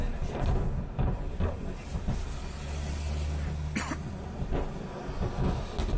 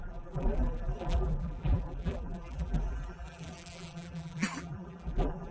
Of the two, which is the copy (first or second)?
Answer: second